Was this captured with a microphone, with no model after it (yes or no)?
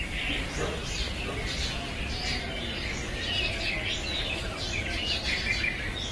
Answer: no